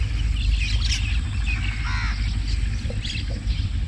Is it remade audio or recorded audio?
recorded